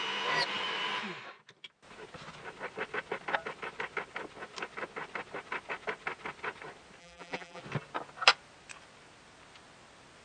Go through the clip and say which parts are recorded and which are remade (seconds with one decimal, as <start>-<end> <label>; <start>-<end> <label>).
0.0-7.0 recorded; 7.0-7.6 remade; 7.6-10.2 recorded